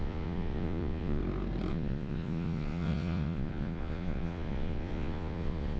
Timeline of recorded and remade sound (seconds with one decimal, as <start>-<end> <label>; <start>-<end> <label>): 0.0-1.2 remade; 1.2-1.7 recorded; 1.7-5.8 remade